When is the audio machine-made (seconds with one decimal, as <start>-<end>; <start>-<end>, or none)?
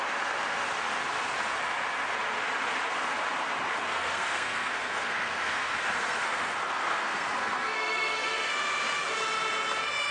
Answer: 3.9-8.5